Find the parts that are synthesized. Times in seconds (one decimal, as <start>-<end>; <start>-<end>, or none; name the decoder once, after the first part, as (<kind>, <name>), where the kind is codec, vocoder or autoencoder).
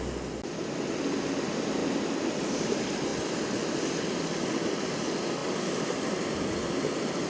none